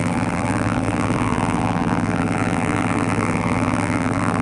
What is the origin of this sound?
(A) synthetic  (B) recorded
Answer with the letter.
A